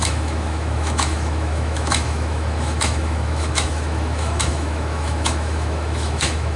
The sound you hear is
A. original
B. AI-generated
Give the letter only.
B